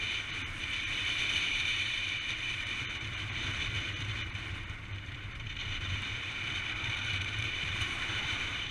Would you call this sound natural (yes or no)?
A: no